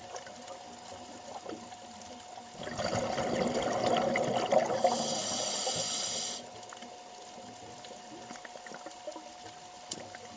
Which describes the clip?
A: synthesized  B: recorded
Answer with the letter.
B